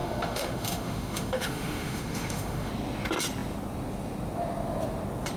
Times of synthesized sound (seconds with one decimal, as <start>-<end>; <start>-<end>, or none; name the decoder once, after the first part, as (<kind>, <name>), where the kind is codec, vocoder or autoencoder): 0.0-2.7 (autoencoder, DAC-VAE)